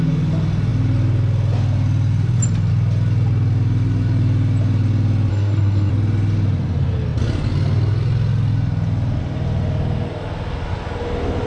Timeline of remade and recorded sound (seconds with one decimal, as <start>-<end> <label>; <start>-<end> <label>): 0.0-5.3 recorded; 5.3-5.9 remade; 5.9-11.5 recorded